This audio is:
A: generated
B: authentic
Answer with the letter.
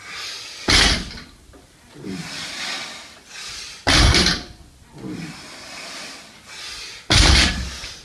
B